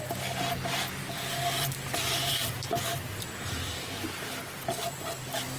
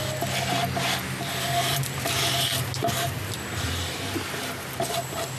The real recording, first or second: second